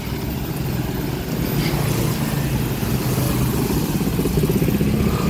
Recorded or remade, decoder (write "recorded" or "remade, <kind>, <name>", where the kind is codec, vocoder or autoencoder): recorded